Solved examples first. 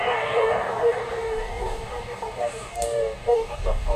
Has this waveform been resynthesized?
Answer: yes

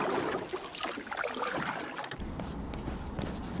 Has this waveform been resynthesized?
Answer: no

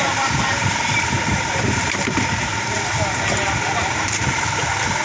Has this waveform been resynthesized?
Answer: yes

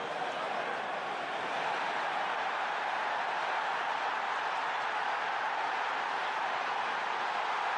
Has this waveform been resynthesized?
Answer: no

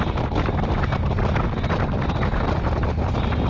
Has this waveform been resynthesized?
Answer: no